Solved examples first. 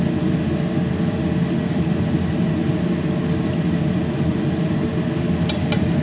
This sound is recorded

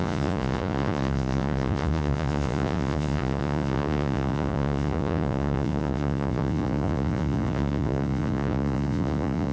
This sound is remade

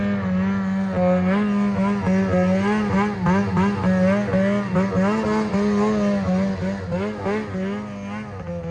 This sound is recorded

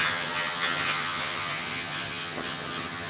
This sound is remade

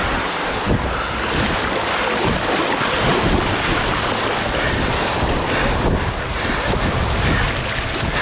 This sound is recorded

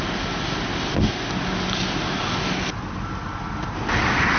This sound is recorded